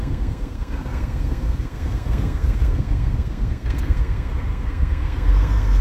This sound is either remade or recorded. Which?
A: remade